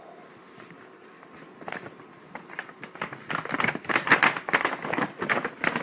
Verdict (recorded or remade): recorded